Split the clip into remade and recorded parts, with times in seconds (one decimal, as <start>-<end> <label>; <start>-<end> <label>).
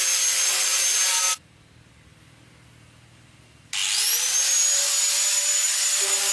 0.0-6.3 recorded